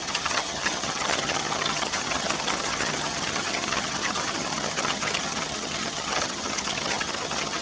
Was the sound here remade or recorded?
remade